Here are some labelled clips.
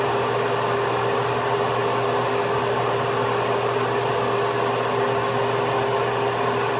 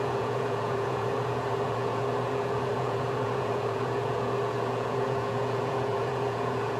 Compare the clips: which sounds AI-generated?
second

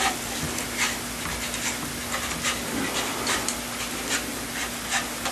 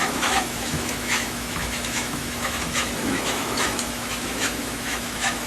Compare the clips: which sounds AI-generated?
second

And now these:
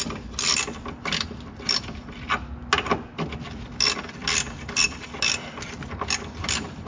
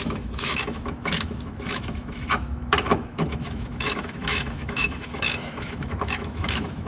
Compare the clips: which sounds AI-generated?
second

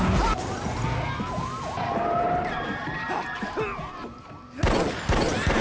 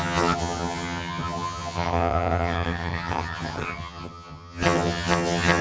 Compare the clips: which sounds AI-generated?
second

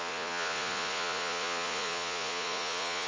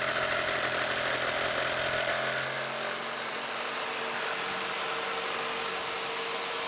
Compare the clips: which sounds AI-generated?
first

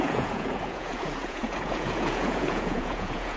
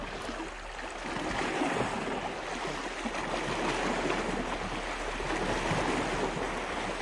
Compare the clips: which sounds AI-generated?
first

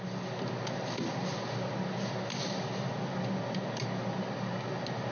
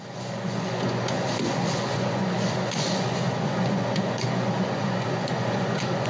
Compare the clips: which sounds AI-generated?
second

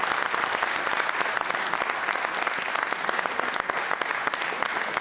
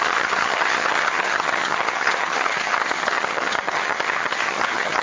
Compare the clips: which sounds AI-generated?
second